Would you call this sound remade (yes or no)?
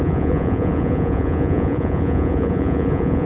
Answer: yes